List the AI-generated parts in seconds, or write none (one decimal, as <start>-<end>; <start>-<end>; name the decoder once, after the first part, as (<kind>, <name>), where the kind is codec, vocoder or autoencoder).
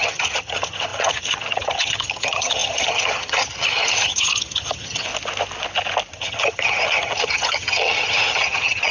0.0-5.1 (vocoder, HiFi-GAN); 6.1-8.9